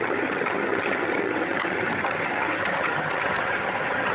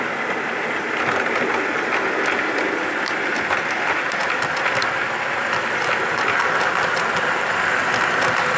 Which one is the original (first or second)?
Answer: second